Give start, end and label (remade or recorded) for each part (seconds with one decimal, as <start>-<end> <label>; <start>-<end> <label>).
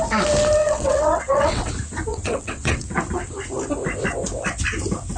0.0-0.6 recorded; 0.6-1.7 remade; 1.7-2.1 recorded; 2.1-2.9 remade; 2.9-5.2 recorded